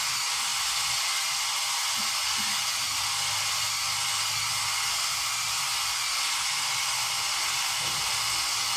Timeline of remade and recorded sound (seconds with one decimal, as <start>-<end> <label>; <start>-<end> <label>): 0.0-8.8 recorded